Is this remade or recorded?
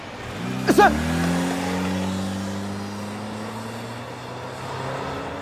recorded